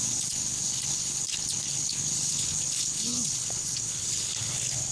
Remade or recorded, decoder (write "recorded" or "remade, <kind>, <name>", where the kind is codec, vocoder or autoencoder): remade, codec, HILCodec